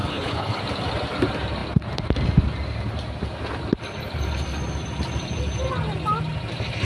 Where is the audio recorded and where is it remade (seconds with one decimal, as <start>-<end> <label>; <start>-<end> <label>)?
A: 0.0-0.6 remade; 0.6-6.8 recorded